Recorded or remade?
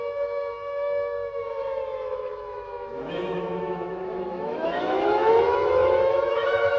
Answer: remade